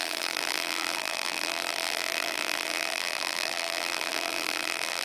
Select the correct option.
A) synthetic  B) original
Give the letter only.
A